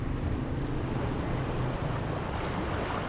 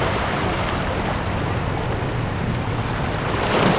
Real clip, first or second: first